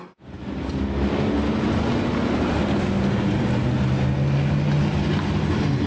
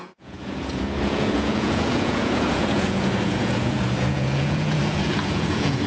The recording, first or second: first